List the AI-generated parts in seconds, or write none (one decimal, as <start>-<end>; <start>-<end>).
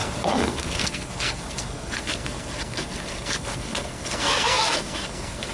0.0-5.5